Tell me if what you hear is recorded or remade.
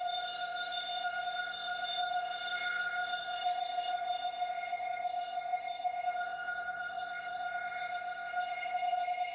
remade